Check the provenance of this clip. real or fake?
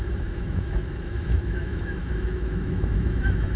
fake